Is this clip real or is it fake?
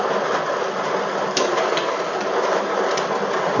real